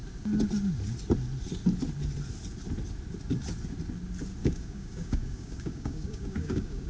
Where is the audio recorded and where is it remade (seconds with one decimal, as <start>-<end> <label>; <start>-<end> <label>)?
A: 0.0-4.4 recorded; 4.4-6.9 remade